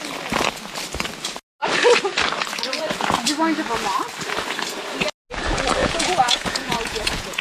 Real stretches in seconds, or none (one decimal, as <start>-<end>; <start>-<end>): 0.0-5.8